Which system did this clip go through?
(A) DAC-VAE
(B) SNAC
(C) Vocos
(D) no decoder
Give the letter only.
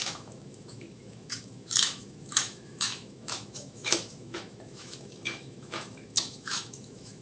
A